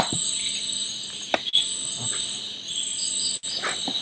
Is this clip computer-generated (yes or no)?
no